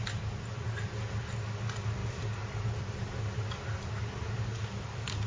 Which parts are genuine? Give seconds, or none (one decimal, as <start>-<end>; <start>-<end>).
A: 0.0-5.3